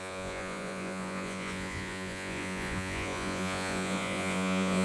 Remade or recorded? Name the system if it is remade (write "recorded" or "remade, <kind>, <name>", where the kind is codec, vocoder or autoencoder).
remade, vocoder, Vocos